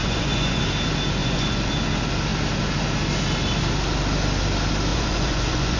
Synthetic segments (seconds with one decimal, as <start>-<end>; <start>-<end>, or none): 0.0-0.6; 1.2-1.7; 4.9-5.8